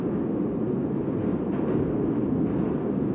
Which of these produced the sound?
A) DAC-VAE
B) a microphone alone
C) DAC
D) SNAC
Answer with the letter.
B